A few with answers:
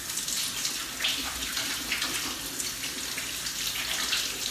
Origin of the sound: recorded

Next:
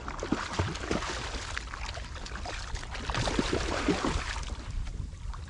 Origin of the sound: recorded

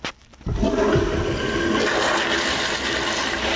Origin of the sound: recorded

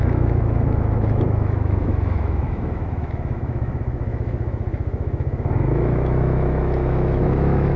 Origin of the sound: remade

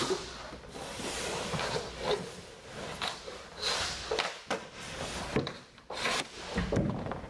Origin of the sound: recorded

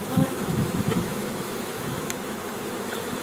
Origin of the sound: remade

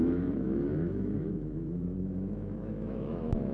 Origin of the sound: remade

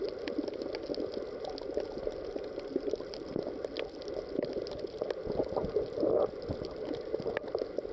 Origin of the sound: recorded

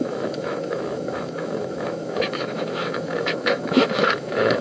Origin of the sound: remade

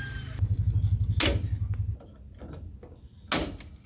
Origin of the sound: recorded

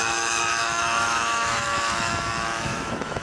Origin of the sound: remade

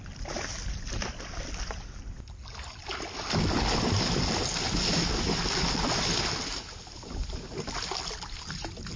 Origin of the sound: recorded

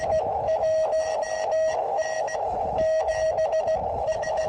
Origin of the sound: remade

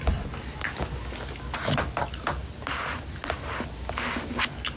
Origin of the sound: recorded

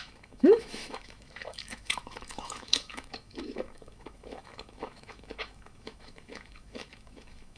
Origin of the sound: remade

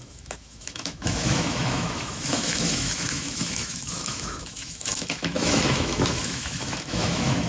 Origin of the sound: remade